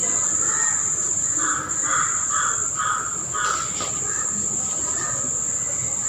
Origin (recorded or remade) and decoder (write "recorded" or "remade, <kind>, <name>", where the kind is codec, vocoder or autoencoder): recorded